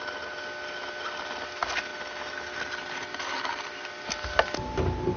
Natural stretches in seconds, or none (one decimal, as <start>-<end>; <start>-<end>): 0.0-5.2